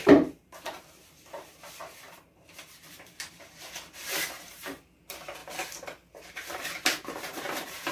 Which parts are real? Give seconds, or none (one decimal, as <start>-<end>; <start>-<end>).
5.4-6.3